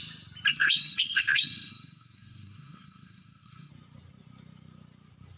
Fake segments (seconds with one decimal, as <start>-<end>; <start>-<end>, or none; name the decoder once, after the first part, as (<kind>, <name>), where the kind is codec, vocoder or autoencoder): 0.5-3.7 (codec, SNAC)